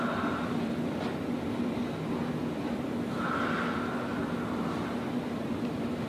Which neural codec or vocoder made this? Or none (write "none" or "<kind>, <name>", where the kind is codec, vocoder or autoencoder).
none